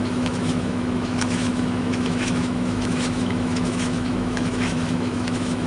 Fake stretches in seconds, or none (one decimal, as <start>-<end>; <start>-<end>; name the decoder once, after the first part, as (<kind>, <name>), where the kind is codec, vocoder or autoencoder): 0.0-5.7 (autoencoder, DAC-VAE)